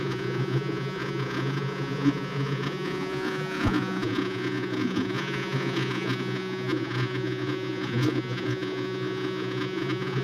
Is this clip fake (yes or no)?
yes